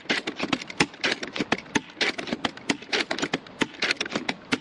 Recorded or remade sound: recorded